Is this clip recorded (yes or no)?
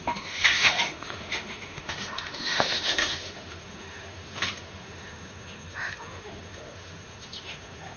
no